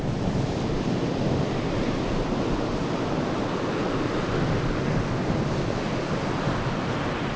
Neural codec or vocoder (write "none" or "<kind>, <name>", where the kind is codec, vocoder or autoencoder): none